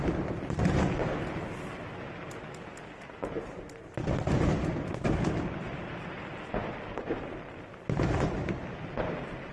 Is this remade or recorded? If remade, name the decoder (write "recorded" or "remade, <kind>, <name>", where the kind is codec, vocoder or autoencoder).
recorded